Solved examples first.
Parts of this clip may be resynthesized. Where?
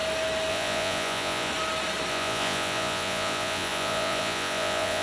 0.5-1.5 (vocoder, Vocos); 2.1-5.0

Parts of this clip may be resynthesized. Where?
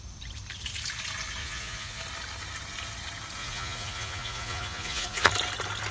1.4-2.0 (vocoder, Vocos); 3.4-5.3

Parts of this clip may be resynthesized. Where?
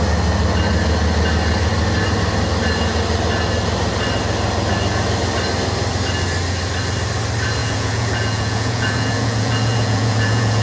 7.6-10.6 (vocoder, Vocos)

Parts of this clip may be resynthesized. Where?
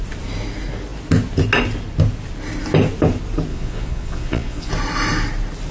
3.5-4.7 (vocoder, Vocos)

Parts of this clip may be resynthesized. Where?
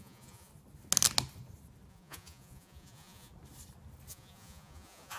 0.0-0.5 (vocoder, Vocos); 1.9-3.3; 4.1-5.2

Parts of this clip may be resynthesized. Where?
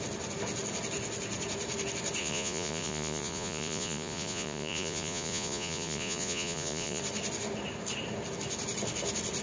2.2-7.0 (vocoder, Vocos)